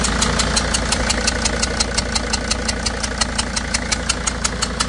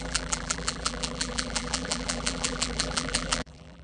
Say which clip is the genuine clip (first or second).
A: first